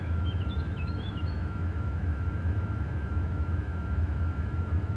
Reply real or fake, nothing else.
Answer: fake